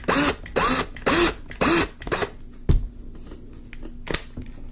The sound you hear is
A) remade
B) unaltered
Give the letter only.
B